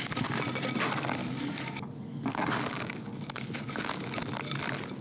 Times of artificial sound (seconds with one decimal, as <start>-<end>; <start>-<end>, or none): 1.2-4.2